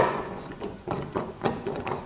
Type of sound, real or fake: fake